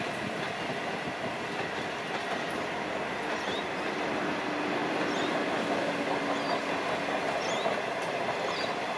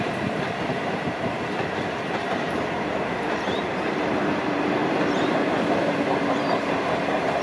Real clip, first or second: first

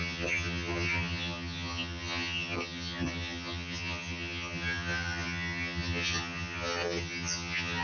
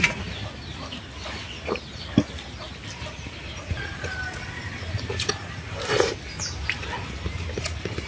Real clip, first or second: second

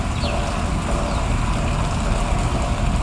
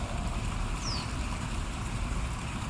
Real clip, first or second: first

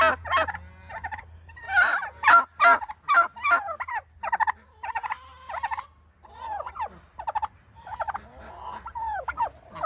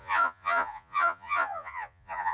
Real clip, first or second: first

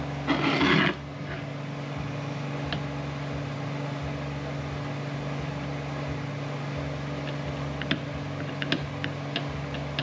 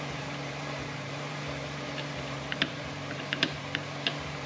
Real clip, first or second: first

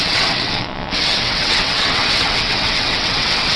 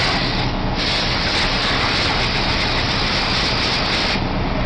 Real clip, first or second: second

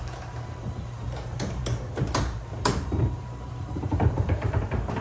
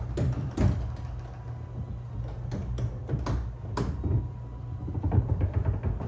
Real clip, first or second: second